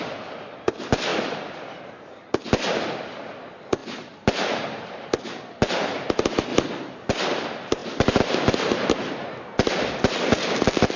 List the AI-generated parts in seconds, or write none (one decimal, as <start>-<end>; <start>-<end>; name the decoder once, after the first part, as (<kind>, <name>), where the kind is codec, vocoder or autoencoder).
none